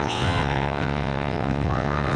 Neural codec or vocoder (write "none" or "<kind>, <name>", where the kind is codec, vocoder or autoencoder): vocoder, WaveNeXt